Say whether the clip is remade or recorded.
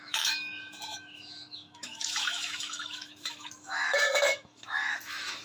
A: remade